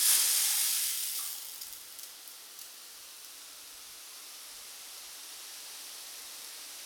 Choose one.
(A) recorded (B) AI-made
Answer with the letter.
A